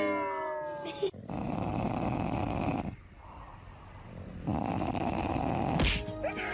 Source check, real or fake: real